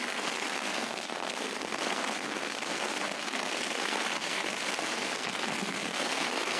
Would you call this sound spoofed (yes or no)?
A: yes